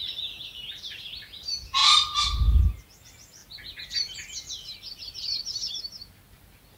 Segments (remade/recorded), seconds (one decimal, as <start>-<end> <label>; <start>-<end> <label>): 0.0-1.8 recorded; 1.8-2.6 remade; 2.6-3.4 recorded; 3.4-5.7 remade; 5.7-6.8 recorded